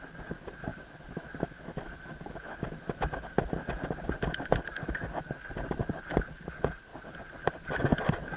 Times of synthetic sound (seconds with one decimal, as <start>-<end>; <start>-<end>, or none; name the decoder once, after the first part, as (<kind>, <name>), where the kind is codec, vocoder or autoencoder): 0.7-3.3 (autoencoder, DAC-VAE)